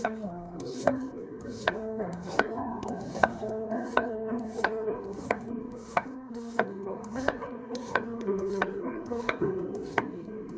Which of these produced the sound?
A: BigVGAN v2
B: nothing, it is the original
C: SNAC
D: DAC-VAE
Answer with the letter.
C